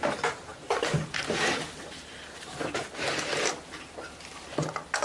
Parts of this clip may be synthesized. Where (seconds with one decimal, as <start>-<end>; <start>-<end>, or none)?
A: none